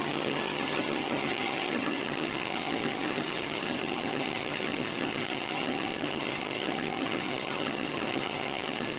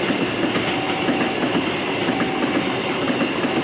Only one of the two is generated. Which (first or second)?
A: first